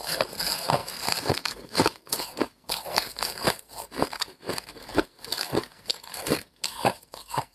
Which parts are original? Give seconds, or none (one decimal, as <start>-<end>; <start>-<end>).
none

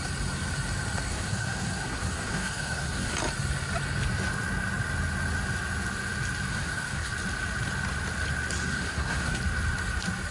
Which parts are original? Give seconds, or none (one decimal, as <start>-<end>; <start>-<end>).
0.0-1.1; 3.1-6.5; 7.1-8.7; 9.4-10.3

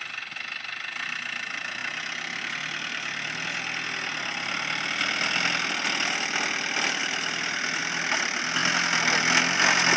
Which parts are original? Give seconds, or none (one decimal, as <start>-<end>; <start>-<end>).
0.0-10.0

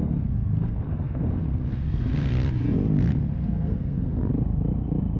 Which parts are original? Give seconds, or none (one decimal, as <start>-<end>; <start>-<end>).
2.1-3.0; 4.2-5.2

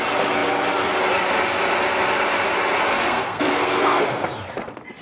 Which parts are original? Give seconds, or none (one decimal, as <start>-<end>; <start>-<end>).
0.0-2.9; 4.0-5.0